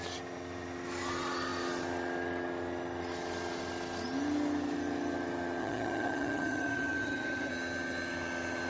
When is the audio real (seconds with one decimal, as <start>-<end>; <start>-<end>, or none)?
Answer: 0.0-5.6; 7.5-8.7